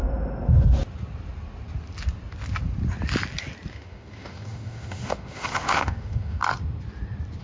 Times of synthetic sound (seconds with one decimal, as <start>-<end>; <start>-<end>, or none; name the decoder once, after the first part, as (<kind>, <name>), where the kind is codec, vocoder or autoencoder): 3.7-6.4 (autoencoder, DAC-VAE)